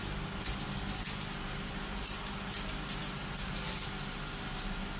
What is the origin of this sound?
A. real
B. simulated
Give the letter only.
A